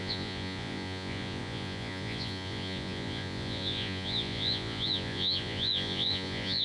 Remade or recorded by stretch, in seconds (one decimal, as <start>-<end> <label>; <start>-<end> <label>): 0.0-6.6 remade

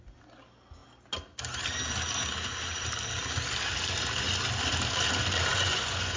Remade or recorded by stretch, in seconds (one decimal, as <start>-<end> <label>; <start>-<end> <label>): 0.0-5.5 recorded; 5.5-6.2 remade

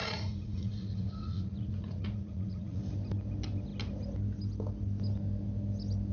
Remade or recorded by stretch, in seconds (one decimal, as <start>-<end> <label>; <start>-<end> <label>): 0.0-2.8 remade; 2.8-6.1 recorded

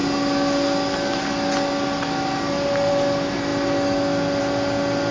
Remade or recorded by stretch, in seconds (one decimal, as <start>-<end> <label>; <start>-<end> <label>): 0.0-5.1 recorded

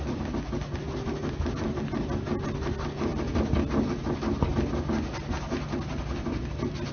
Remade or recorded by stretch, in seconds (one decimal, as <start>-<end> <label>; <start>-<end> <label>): 0.0-6.9 recorded

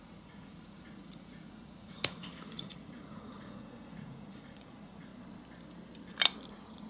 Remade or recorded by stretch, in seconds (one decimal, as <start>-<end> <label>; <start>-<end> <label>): 0.0-5.1 remade; 5.1-6.5 recorded; 6.5-6.9 remade

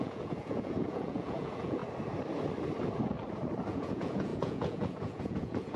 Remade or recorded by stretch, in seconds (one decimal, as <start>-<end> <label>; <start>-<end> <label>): 0.0-1.8 remade; 1.8-3.7 recorded; 3.7-5.8 remade

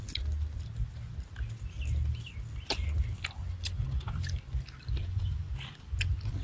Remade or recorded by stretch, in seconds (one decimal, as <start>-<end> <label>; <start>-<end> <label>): 0.0-5.0 recorded; 5.0-5.5 remade; 5.5-6.4 recorded